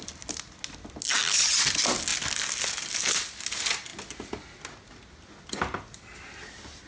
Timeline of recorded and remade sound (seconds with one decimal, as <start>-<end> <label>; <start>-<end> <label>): 0.0-6.9 recorded